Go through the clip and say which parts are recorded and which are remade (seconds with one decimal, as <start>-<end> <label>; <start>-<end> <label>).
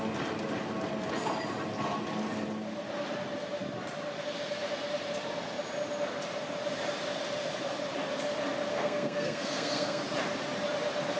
0.0-8.7 recorded; 8.7-10.0 remade; 10.0-11.2 recorded